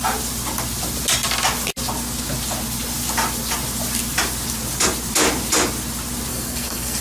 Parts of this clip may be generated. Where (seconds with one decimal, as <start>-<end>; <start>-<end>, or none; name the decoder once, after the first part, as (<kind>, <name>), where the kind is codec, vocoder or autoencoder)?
6.3-7.0 (codec, SNAC)